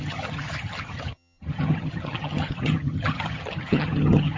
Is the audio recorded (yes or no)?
no